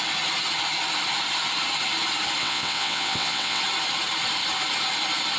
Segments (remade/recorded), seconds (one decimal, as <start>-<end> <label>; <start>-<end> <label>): 0.0-2.4 recorded; 2.4-3.6 remade; 3.6-5.4 recorded